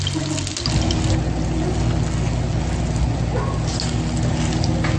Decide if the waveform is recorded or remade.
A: recorded